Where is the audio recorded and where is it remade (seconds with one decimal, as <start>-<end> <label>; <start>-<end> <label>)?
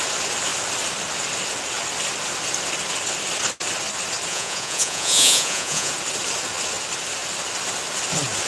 0.0-4.3 recorded; 4.3-5.9 remade; 5.9-8.5 recorded